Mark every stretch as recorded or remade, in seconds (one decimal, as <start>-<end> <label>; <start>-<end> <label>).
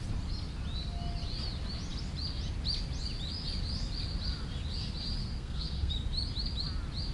0.0-5.2 recorded; 5.2-5.9 remade; 5.9-7.1 recorded